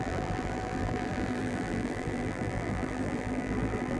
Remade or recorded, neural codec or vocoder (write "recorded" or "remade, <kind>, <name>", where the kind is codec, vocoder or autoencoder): remade, vocoder, BigVGAN v2